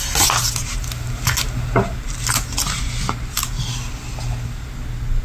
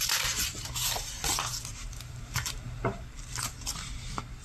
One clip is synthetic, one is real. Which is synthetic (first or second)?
second